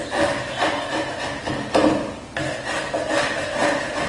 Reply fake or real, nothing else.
real